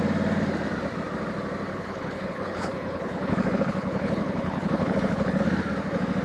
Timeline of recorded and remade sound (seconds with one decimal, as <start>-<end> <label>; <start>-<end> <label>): 0.0-1.7 recorded; 1.7-5.4 remade; 5.4-6.2 recorded